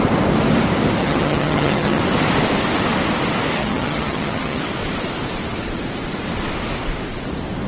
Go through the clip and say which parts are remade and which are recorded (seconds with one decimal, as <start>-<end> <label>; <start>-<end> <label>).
0.0-1.0 recorded; 1.0-2.0 remade; 2.0-3.6 recorded; 3.6-4.6 remade; 4.6-7.7 recorded